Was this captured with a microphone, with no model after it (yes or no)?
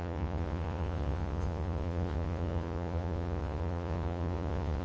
no